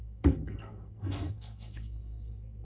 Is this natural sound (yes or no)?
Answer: no